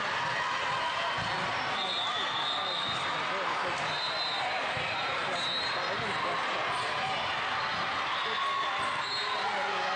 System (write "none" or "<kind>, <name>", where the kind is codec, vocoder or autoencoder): none